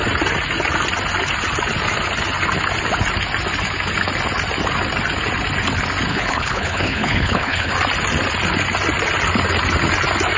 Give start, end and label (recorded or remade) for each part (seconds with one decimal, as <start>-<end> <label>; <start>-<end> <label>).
0.0-6.1 recorded; 6.1-7.7 remade; 7.7-10.4 recorded